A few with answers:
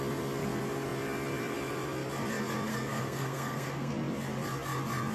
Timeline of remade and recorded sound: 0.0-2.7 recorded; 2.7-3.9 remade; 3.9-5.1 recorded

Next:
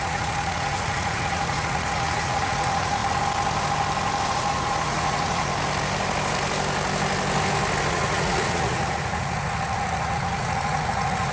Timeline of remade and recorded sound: 0.0-3.0 remade; 3.0-4.3 recorded; 4.3-5.5 remade; 5.5-7.9 recorded; 7.9-11.3 remade

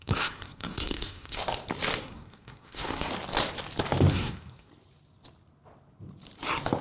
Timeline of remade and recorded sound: 0.0-1.4 remade; 1.4-2.0 recorded; 2.0-3.1 remade; 3.1-4.1 recorded; 4.1-4.7 remade; 4.7-6.8 recorded